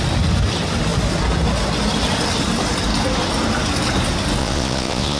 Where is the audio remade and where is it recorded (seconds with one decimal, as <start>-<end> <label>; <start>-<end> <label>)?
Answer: 0.0-4.4 recorded; 4.4-5.2 remade